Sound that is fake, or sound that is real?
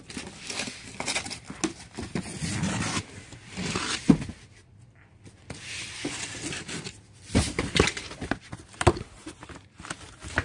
real